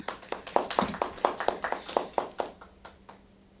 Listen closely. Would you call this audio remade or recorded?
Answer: recorded